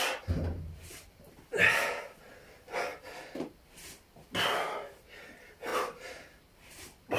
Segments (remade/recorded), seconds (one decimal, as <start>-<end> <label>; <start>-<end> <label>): 0.0-7.2 recorded